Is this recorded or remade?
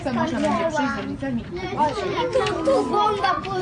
recorded